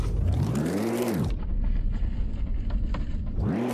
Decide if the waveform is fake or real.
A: real